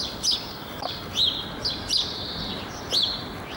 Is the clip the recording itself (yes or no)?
yes